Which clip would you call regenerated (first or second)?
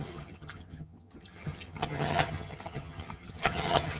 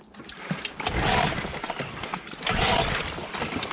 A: first